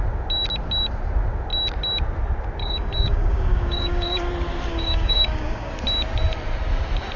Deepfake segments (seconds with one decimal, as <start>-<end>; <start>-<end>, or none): 2.6-4.3; 4.7-5.7

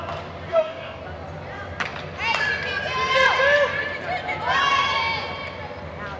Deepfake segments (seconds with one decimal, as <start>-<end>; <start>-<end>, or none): 0.5-1.0

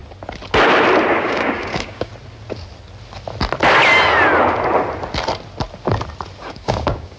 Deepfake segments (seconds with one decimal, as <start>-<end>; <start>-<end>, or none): 1.2-2.1; 6.4-7.2

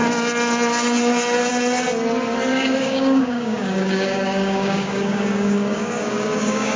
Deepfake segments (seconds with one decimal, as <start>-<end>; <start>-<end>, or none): 2.5-6.8